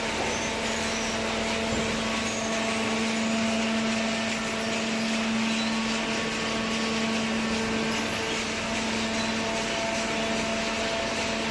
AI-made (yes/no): no